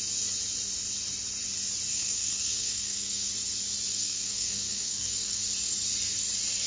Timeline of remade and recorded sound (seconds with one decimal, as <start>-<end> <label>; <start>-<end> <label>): 0.0-1.9 recorded; 1.9-3.3 remade; 3.3-3.9 recorded; 3.9-5.4 remade; 5.4-6.7 recorded